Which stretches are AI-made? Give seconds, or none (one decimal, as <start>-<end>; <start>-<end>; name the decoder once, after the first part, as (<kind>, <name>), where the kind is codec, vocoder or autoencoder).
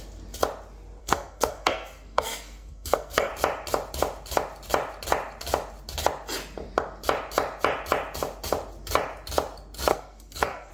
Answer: 1.0-3.3 (codec, SNAC); 9.9-10.7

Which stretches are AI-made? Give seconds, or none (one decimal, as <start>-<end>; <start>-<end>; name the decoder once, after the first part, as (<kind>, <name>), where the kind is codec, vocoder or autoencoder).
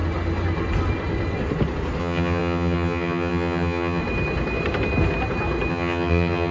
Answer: 2.0-4.0 (vocoder, HiFi-GAN); 5.7-6.5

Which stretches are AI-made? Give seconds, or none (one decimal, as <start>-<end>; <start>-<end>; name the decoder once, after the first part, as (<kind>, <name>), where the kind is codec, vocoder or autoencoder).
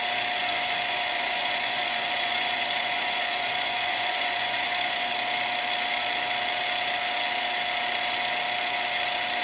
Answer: 0.4-5.1 (vocoder, Vocos)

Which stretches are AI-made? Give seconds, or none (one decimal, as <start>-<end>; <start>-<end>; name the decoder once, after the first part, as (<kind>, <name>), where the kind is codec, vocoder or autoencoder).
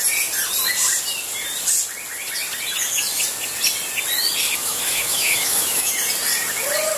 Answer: 4.6-5.9 (autoencoder, DAC-VAE)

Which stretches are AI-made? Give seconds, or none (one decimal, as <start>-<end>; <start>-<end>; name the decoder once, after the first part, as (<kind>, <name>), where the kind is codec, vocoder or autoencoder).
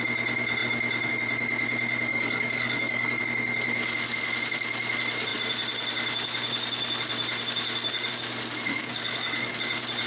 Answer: 2.1-3.2 (codec, DAC); 8.8-9.5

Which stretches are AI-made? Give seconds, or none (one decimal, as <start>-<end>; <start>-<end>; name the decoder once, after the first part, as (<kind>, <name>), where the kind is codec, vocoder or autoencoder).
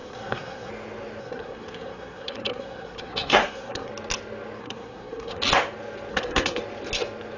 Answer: 0.0-0.7 (codec, SNAC); 1.2-3.9; 4.6-5.4; 6.1-6.6